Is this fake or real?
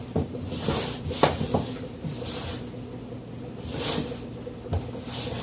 real